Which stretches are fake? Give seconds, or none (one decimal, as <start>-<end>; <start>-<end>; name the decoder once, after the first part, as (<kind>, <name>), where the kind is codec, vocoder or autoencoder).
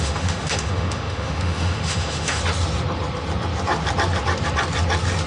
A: 0.0-2.4 (autoencoder, DAC-VAE)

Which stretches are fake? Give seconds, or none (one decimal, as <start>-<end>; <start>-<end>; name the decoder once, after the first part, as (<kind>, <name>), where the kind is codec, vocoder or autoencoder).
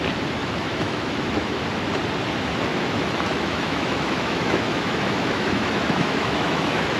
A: 0.4-1.6 (autoencoder, DAC-VAE); 2.7-7.0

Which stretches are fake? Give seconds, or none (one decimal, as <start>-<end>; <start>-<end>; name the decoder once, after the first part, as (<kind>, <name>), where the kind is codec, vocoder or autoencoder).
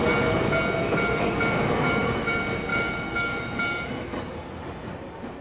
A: 0.8-2.3 (autoencoder, DAC-VAE); 2.7-4.2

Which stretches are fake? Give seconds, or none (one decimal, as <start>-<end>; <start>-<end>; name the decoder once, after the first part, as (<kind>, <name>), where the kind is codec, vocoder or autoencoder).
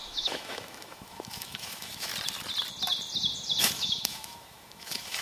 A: 0.0-2.1 (autoencoder, DAC-VAE); 3.6-5.2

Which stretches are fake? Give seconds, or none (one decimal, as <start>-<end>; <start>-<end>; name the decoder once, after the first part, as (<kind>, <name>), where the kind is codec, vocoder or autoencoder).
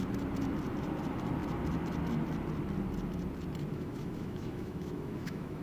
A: 3.7-5.6 (autoencoder, DAC-VAE)